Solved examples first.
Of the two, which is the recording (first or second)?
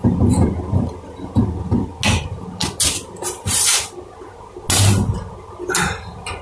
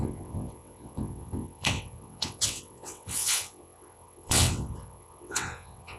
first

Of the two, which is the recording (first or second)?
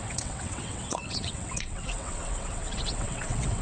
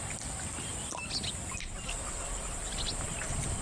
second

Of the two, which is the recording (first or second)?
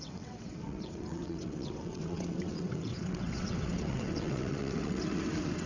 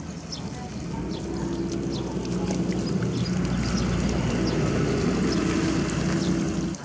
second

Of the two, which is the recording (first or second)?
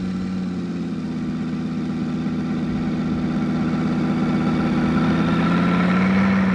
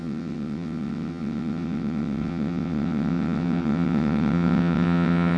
first